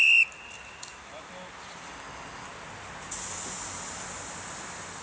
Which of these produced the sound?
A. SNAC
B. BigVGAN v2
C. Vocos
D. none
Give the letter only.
D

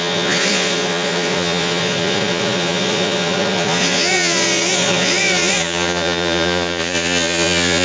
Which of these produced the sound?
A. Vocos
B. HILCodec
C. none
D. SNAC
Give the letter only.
A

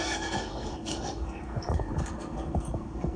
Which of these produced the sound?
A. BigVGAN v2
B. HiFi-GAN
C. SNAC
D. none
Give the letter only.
C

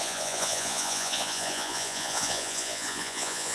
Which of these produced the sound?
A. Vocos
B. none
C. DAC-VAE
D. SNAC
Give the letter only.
A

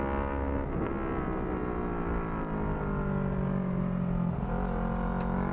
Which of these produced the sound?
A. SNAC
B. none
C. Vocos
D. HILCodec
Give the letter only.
B